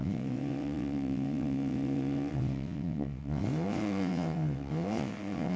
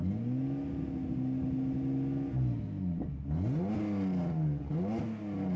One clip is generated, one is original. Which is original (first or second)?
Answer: second